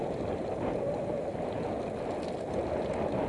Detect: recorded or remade recorded